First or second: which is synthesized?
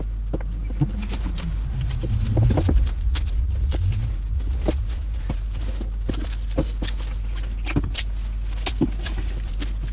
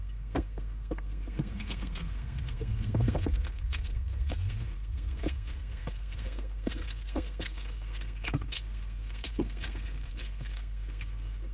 second